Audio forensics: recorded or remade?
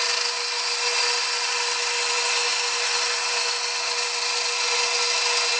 recorded